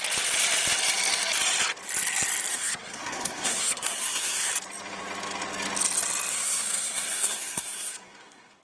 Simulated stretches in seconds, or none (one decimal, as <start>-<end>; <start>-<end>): 2.5-4.5; 6.3-8.6